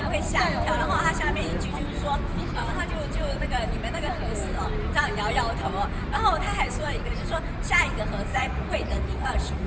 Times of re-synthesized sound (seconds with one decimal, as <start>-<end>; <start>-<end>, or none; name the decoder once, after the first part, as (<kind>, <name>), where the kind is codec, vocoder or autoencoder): 8.3-9.7 (vocoder, Vocos)